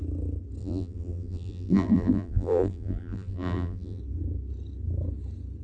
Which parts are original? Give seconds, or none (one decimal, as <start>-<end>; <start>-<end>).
0.0-0.6; 4.0-5.6